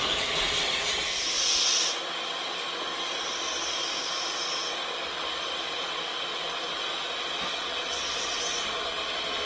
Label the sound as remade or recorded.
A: recorded